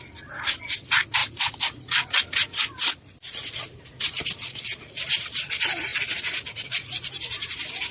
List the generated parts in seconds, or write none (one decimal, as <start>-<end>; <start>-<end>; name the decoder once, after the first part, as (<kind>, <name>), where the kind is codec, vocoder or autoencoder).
5.9-6.9 (vocoder, Vocos)